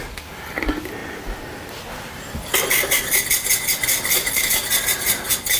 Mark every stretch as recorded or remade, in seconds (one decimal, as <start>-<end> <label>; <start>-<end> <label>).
0.0-5.6 recorded